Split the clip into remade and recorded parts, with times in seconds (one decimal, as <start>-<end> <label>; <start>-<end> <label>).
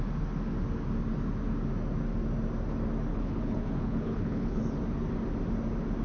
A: 0.0-3.1 recorded; 3.1-4.6 remade; 4.6-6.0 recorded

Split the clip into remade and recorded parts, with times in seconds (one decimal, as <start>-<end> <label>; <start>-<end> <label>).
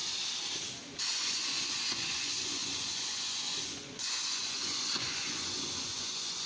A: 0.0-1.0 recorded; 1.0-6.5 remade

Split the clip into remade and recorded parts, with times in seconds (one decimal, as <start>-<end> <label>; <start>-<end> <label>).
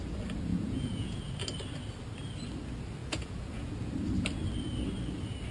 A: 0.0-0.5 recorded; 0.5-1.3 remade; 1.3-3.0 recorded; 3.0-3.7 remade; 3.7-5.5 recorded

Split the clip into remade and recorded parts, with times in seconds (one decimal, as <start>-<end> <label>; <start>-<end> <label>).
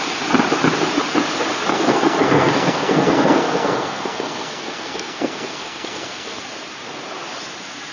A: 0.0-1.7 recorded; 1.7-6.4 remade; 6.4-7.9 recorded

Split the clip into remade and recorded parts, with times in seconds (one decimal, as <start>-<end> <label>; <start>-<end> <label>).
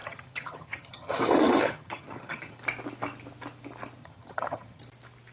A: 0.0-2.6 remade; 2.6-4.0 recorded; 4.0-4.8 remade; 4.8-5.3 recorded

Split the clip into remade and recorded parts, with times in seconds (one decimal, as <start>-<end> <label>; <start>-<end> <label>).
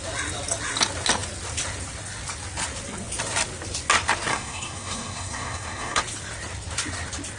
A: 0.0-4.3 recorded; 4.3-6.0 remade; 6.0-7.4 recorded